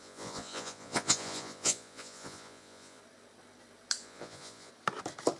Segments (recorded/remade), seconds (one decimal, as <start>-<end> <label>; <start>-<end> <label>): 0.0-3.0 remade; 3.0-4.0 recorded; 4.0-4.7 remade; 4.7-5.4 recorded